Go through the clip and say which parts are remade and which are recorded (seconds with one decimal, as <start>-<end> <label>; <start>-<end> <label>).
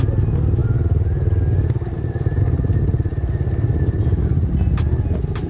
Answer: 0.0-5.5 recorded